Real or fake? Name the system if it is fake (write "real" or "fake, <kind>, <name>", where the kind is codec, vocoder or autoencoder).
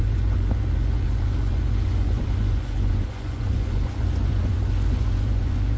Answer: fake, vocoder, Vocos